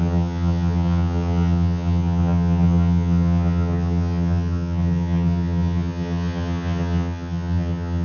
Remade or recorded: remade